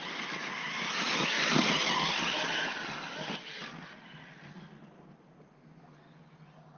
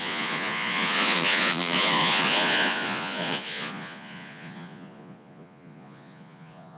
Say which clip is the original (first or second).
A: first